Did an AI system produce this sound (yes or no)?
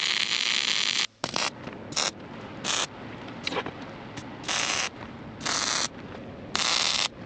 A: no